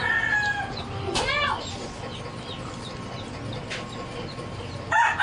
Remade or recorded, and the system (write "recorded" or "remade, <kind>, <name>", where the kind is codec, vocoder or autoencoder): recorded